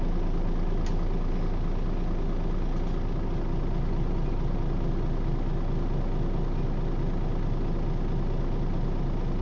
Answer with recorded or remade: recorded